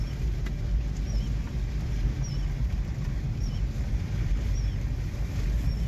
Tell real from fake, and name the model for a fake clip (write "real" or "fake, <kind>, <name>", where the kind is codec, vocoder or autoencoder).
real